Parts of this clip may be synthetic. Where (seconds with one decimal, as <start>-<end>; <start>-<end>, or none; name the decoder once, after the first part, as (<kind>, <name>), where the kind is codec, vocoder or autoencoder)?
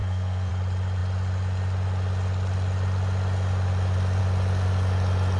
0.0-0.5 (codec, SNAC)